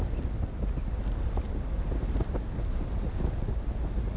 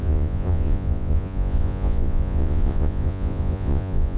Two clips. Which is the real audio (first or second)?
first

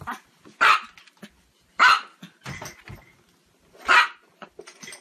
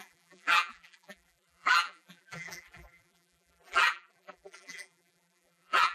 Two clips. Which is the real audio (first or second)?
first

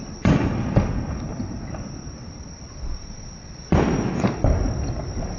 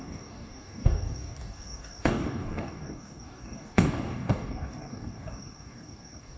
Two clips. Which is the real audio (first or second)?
first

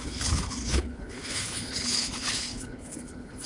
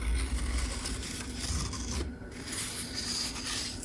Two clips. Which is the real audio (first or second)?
second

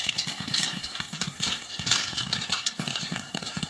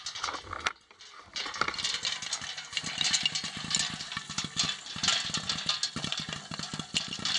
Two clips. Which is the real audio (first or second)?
second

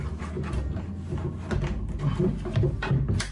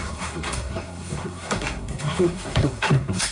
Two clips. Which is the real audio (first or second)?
first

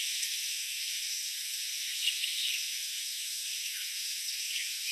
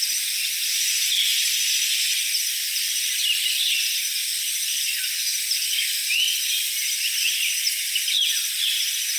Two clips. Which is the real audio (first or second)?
second